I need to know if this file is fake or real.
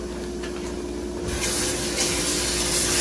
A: real